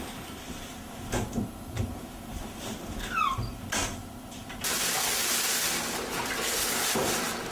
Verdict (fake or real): real